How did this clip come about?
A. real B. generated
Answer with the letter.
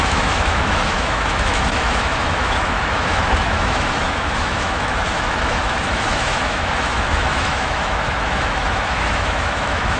B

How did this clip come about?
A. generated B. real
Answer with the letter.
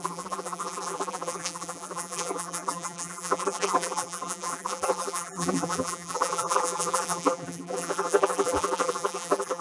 A